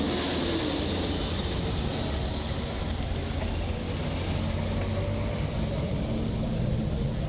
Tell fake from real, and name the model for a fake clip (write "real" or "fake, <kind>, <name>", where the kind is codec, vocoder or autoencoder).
real